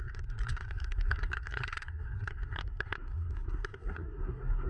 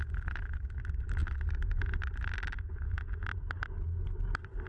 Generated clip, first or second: first